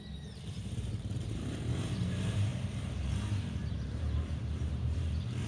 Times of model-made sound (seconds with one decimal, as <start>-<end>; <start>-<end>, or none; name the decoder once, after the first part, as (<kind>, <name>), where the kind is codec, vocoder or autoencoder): 0.0-5.5 (vocoder, BigVGAN v2)